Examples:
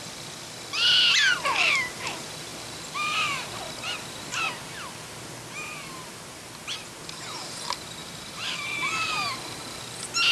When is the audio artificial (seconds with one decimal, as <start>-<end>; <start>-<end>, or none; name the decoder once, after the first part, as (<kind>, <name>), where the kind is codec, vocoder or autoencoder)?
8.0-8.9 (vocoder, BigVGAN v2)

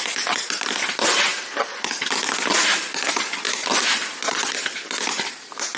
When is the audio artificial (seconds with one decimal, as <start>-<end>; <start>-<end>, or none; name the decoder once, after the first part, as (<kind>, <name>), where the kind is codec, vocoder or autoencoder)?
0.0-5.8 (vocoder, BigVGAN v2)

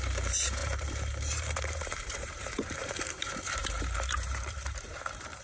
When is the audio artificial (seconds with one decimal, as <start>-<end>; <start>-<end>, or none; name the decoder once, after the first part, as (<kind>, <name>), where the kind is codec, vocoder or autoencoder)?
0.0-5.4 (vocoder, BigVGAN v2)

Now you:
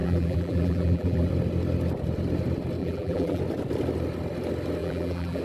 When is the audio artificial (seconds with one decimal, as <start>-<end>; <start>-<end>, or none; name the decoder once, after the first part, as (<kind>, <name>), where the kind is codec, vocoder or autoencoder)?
0.0-1.3 (vocoder, BigVGAN v2); 2.8-3.4; 4.8-5.4